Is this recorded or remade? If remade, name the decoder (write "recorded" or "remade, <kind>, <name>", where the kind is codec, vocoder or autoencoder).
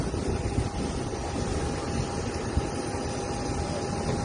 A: recorded